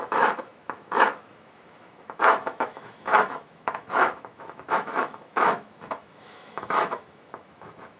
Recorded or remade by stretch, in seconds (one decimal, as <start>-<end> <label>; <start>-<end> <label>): 0.0-8.0 remade